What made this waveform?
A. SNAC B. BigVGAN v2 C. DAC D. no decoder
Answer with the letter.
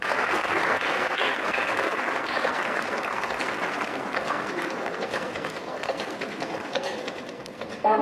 A